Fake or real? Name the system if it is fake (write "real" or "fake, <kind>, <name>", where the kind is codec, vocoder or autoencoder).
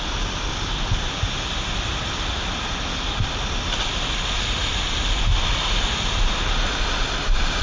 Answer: real